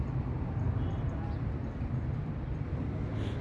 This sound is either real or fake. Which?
real